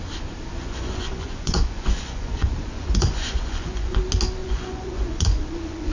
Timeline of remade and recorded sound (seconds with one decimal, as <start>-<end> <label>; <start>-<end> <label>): 0.0-0.5 recorded; 0.5-4.0 remade; 4.0-4.4 recorded; 4.4-5.9 remade